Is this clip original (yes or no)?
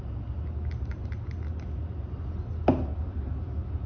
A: yes